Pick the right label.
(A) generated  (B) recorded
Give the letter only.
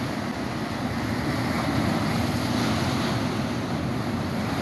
B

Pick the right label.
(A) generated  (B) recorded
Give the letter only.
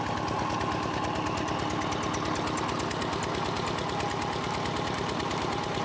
B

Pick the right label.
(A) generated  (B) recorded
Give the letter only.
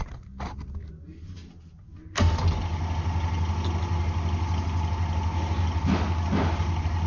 B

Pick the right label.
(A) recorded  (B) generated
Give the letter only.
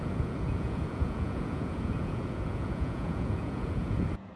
B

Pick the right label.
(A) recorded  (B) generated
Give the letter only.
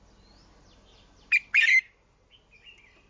A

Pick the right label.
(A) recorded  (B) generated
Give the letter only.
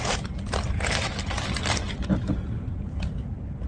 A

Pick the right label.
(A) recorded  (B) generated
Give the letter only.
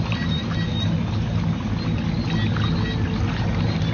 A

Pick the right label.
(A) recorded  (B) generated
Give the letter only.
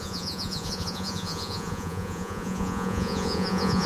B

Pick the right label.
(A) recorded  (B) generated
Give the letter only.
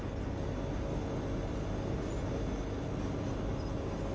A